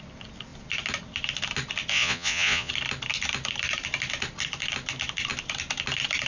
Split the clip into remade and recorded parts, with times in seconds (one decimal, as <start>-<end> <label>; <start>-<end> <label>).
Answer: 0.0-1.9 recorded; 1.9-2.7 remade; 2.7-6.3 recorded